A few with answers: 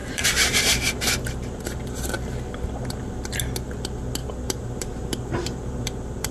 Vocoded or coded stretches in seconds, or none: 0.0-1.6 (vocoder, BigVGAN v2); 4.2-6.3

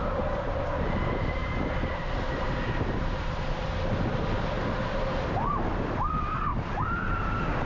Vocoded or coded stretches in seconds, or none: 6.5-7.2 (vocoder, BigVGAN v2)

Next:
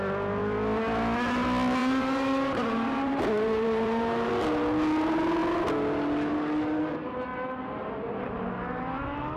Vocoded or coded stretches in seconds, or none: 1.8-4.3 (vocoder, BigVGAN v2)

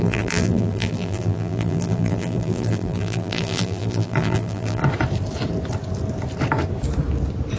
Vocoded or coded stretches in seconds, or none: 0.0-4.8 (vocoder, BigVGAN v2)

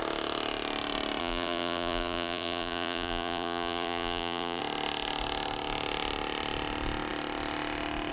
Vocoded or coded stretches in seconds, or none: 1.2-4.6 (vocoder, BigVGAN v2)

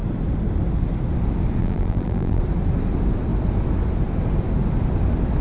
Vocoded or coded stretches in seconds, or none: 1.6-2.4 (vocoder, BigVGAN v2)